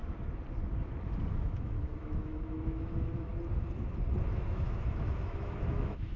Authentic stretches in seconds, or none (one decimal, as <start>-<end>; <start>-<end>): 0.0-1.3; 3.3-4.3

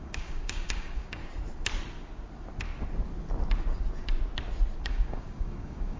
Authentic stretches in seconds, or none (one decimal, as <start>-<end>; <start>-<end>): 1.2-4.8

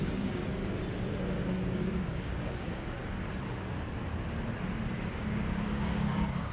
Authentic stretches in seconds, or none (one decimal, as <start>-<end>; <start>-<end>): 0.4-1.3; 3.0-5.1

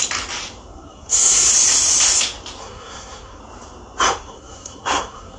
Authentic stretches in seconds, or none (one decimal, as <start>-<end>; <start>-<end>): 0.0-0.7; 1.5-2.6; 3.4-4.2

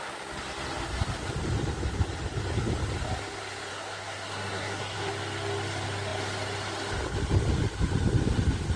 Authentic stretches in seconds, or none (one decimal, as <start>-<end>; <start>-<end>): 0.0-3.7; 5.1-8.8

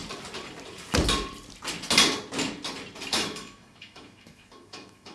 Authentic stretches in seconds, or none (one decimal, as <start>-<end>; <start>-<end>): 0.0-3.1